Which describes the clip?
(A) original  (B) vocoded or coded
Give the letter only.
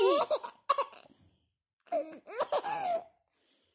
A